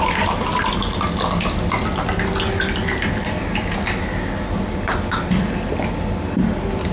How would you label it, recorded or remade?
recorded